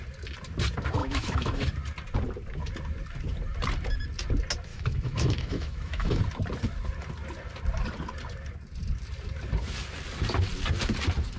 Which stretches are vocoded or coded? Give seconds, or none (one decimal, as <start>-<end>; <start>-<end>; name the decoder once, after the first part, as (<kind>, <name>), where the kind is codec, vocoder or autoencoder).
1.0-1.7 (autoencoder, DAC-VAE); 4.7-6.2